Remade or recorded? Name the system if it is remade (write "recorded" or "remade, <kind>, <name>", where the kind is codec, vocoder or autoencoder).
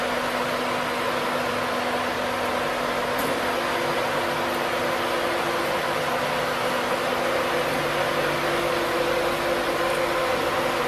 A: recorded